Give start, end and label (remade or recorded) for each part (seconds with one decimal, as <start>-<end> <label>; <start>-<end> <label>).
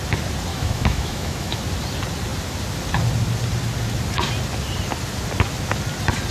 0.0-0.5 recorded; 0.5-1.6 remade; 1.6-6.3 recorded